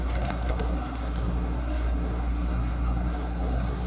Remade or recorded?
remade